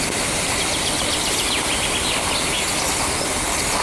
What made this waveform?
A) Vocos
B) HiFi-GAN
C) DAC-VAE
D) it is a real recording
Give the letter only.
D